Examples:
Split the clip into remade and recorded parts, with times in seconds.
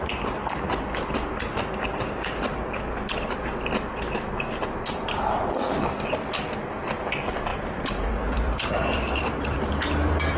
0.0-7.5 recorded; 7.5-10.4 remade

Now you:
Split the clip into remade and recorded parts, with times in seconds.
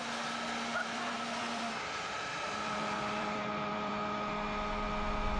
0.0-0.7 recorded; 0.7-3.9 remade; 3.9-5.4 recorded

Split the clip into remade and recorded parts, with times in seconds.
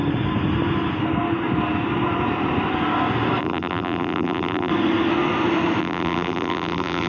0.0-3.4 recorded; 3.4-4.7 remade; 4.7-5.8 recorded; 5.8-7.1 remade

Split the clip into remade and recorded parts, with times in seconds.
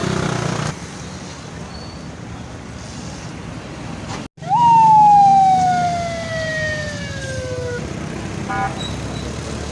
0.0-9.7 recorded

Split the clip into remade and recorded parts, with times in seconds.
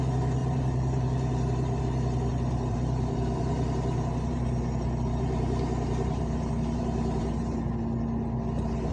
0.0-0.4 recorded; 0.4-1.8 remade; 1.8-2.3 recorded; 2.3-7.2 remade; 7.2-8.9 recorded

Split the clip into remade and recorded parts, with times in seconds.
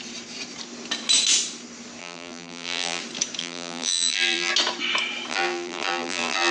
0.0-2.0 recorded; 2.0-3.0 remade; 3.0-3.4 recorded; 3.4-4.5 remade; 4.5-5.3 recorded; 5.3-6.5 remade